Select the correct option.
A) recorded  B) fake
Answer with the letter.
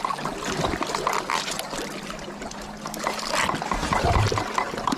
A